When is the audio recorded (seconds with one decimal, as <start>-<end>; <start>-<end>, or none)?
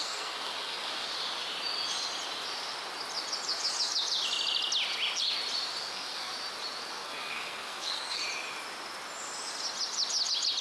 1.1-5.8; 6.3-6.9; 8.2-10.6